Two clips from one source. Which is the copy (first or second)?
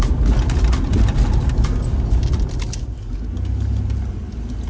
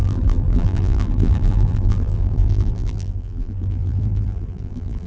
second